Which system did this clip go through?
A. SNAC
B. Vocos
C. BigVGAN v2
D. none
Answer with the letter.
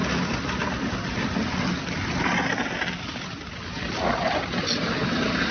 D